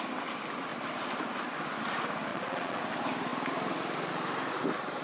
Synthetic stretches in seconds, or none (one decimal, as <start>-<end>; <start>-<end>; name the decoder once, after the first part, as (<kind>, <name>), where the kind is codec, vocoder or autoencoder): 2.3-2.8 (vocoder, Vocos)